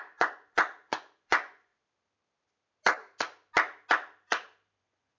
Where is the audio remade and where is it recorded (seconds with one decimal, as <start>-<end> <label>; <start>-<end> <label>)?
0.0-1.7 remade; 1.7-4.8 recorded; 4.8-5.2 remade